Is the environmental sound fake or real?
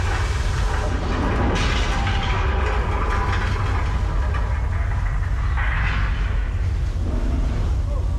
real